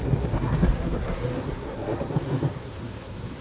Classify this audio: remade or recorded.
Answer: remade